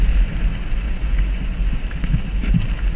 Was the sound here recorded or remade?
recorded